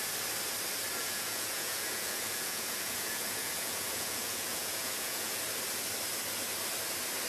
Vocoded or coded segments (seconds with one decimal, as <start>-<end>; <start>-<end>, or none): 1.0-5.4

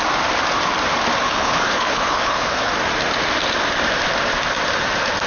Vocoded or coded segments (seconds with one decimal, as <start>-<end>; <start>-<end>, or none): 1.2-2.7

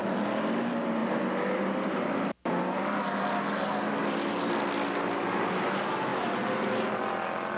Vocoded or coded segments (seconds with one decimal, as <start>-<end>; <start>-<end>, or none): none

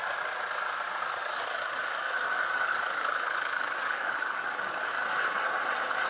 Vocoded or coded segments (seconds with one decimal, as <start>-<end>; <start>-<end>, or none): 1.2-4.9